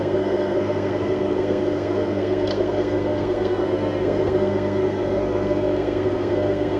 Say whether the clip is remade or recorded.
remade